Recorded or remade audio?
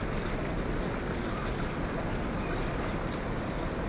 recorded